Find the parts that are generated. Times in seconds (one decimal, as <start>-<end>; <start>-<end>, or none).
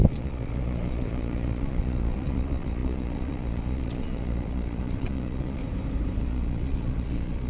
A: 0.0-5.6; 6.2-7.5